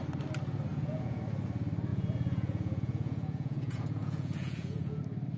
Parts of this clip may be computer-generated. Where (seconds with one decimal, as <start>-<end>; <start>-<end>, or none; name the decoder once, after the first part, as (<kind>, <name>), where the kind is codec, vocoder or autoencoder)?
0.7-1.2 (vocoder, Vocos); 1.9-5.0